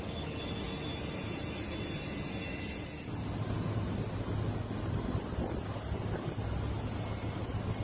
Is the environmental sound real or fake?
real